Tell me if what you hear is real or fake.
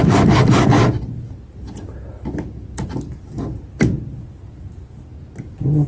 real